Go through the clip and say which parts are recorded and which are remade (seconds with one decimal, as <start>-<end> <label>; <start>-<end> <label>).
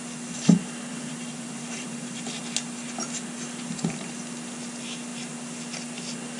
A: 0.0-0.9 recorded; 0.9-2.4 remade; 2.4-6.4 recorded